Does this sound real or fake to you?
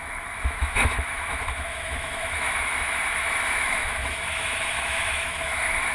fake